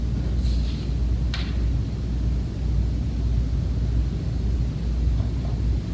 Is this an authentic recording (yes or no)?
yes